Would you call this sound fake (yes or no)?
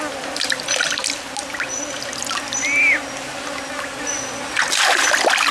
no